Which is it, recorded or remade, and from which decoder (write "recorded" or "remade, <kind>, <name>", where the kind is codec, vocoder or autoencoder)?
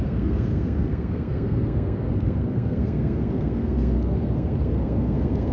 remade, codec, SNAC